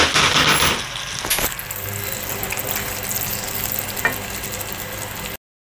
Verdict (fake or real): real